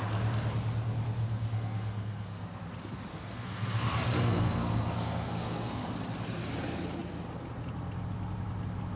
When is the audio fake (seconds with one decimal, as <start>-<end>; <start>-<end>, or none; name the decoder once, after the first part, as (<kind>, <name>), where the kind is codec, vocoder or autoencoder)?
1.2-2.6 (codec, SNAC); 3.1-5.9